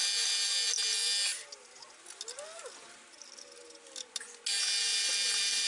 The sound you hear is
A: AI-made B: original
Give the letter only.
B